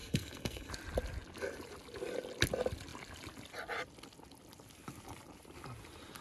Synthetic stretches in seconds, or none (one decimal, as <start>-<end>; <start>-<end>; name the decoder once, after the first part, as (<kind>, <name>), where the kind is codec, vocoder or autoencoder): 0.0-0.7 (codec, SNAC)